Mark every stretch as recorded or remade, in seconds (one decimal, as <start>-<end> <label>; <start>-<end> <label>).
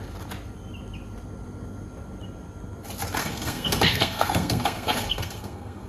0.0-3.2 recorded; 3.2-5.9 remade